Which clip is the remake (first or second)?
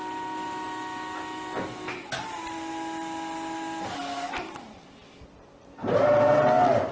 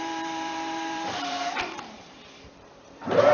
second